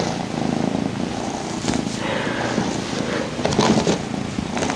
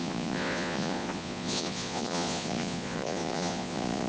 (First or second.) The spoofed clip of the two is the second